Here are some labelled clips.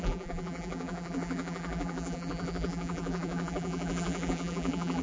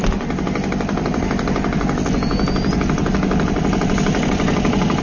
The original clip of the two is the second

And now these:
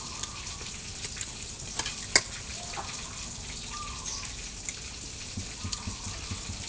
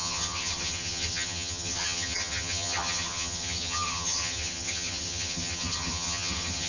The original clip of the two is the first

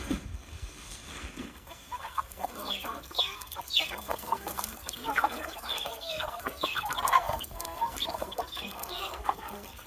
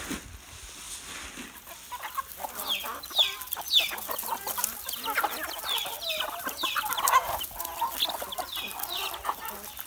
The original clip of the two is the second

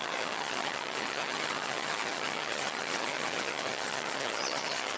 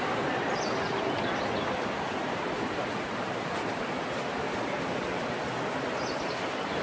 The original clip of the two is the second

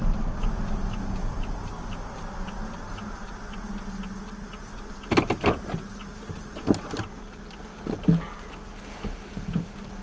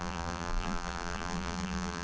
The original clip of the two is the first